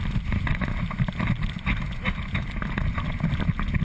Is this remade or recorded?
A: recorded